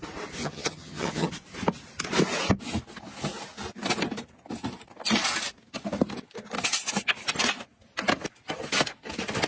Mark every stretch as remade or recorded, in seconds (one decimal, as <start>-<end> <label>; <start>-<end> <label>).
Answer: 0.0-0.4 recorded; 0.4-1.3 remade; 1.3-9.5 recorded